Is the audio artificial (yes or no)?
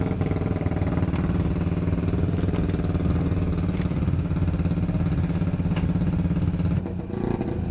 no